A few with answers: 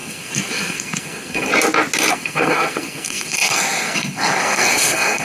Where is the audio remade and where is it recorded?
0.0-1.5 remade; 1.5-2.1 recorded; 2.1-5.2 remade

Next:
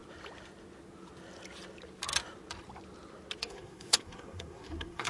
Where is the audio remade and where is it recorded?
0.0-3.4 recorded; 3.4-5.1 remade

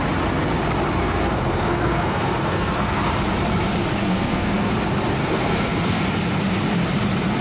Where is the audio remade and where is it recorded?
0.0-1.0 recorded; 1.0-3.1 remade; 3.1-4.0 recorded; 4.0-4.7 remade; 4.7-5.2 recorded; 5.2-6.0 remade; 6.0-7.4 recorded

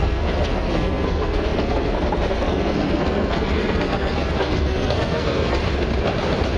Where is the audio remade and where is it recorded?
0.0-5.6 remade; 5.6-6.6 recorded

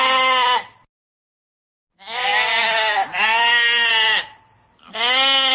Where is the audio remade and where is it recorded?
0.0-5.5 recorded